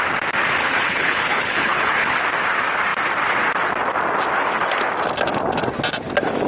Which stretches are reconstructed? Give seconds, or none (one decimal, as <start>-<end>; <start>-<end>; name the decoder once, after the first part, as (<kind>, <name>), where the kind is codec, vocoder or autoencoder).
0.6-2.1 (codec, HILCodec)